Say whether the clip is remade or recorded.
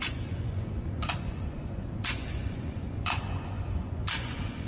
remade